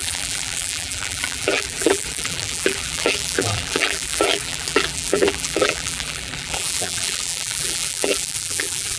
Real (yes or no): no